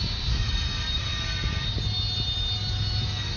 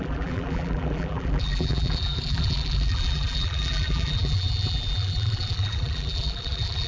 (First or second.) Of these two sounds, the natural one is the first